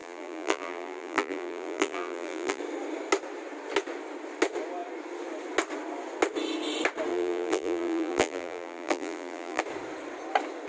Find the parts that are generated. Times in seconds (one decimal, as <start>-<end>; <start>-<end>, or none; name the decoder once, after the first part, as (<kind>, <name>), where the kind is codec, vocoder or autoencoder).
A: 0.0-2.6 (vocoder, BigVGAN v2); 7.1-9.6

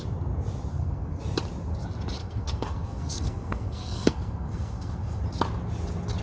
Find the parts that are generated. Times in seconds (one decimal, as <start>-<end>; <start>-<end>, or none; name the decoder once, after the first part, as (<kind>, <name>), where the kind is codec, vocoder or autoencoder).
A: 0.7-1.2 (codec, SNAC); 2.2-5.2

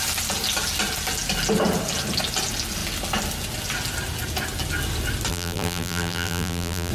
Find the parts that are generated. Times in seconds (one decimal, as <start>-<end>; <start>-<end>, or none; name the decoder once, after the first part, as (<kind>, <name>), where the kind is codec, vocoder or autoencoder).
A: 5.3-6.9 (vocoder, BigVGAN v2)

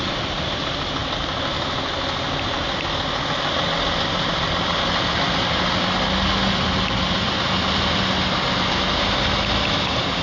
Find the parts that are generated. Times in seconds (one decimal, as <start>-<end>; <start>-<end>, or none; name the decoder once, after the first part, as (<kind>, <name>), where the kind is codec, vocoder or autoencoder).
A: none

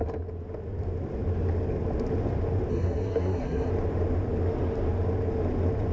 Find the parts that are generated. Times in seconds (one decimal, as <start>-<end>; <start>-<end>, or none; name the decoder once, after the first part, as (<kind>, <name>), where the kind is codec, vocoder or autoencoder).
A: 2.7-3.7 (codec, SNAC)

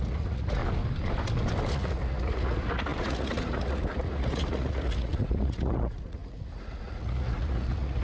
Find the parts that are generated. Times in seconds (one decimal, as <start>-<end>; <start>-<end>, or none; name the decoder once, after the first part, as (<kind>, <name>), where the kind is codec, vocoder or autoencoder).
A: 0.0-0.6 (vocoder, Vocos); 1.7-8.0

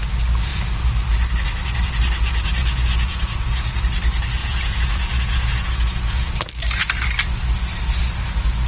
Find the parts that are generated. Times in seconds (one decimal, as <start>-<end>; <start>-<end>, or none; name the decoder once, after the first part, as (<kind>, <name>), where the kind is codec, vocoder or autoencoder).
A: 2.6-3.8 (vocoder, Vocos); 4.4-6.3